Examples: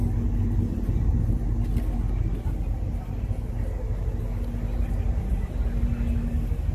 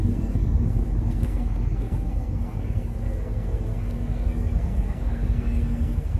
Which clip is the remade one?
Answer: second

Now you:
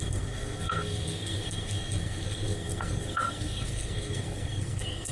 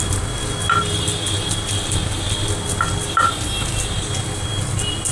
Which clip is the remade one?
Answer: first